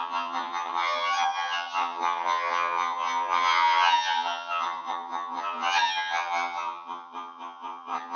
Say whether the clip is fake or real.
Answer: fake